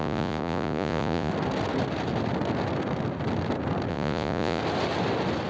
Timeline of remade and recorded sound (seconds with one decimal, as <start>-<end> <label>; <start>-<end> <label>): 0.0-1.3 remade; 1.3-3.9 recorded; 3.9-4.6 remade; 4.6-5.5 recorded